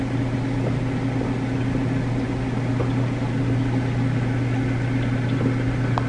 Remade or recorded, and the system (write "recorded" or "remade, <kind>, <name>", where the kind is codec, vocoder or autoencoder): recorded